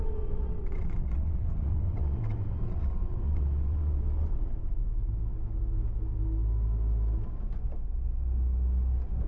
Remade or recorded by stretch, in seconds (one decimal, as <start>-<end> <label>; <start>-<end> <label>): 0.0-4.8 remade; 4.8-9.3 recorded